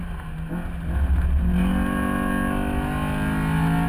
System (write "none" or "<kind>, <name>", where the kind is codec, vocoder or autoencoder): none